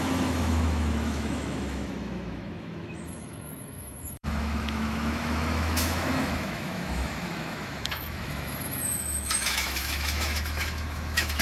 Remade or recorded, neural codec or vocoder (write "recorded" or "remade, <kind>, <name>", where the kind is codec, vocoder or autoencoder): remade, autoencoder, DAC-VAE